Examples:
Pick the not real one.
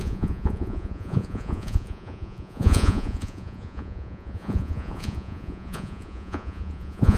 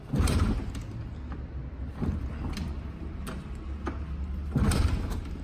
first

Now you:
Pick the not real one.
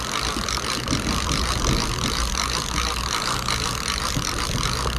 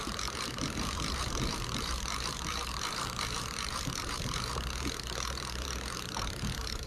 second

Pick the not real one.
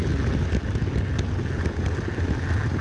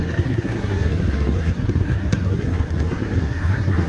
second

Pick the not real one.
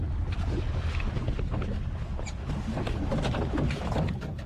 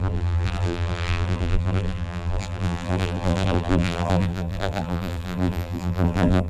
second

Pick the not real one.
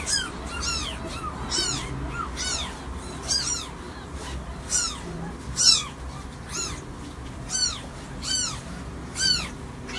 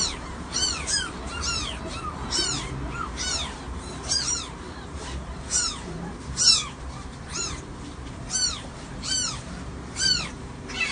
second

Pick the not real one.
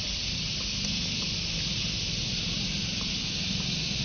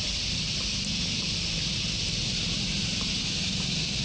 second